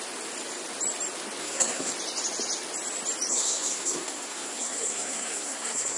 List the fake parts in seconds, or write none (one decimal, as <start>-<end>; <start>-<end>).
1.4-1.9; 3.3-6.0